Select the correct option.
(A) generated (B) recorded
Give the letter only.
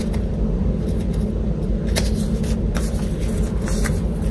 B